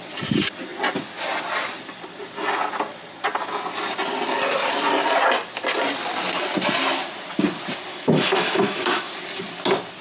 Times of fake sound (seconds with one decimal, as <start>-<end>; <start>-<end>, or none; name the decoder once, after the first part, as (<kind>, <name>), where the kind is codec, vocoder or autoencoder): 7.9-9.1 (autoencoder, DAC-VAE)

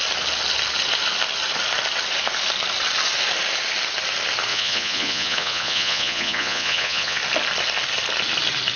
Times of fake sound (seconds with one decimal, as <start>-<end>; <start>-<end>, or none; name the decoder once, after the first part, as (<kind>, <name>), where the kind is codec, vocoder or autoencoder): 4.5-7.2 (vocoder, Vocos)

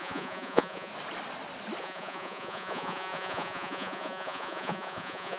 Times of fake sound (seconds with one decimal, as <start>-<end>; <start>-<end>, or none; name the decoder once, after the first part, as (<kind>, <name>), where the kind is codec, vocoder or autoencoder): 0.0-0.9 (vocoder, Vocos); 1.8-5.4

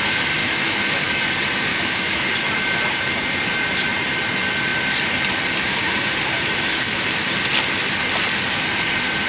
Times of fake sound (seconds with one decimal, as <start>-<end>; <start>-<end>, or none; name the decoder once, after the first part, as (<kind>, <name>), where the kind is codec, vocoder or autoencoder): 0.4-1.2 (autoencoder, DAC-VAE); 1.7-2.3

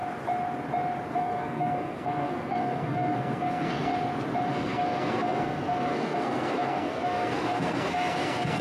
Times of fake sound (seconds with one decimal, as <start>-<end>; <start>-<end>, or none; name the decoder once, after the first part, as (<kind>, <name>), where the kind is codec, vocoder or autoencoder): 1.1-3.9 (codec, SNAC); 4.5-8.6

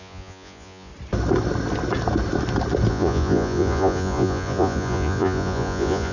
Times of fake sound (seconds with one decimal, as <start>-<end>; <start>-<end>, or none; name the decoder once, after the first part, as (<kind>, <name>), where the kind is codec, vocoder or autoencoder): 0.0-0.9 (vocoder, Vocos); 2.9-6.1

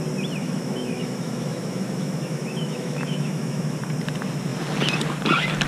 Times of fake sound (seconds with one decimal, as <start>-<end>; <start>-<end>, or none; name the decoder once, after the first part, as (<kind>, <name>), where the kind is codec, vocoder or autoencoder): 0.4-3.8 (autoencoder, DAC-VAE)

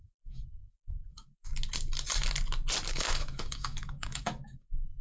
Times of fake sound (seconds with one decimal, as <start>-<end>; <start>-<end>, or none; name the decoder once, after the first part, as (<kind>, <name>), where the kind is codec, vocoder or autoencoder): 0.0-1.5 (autoencoder, DAC-VAE); 2.9-5.0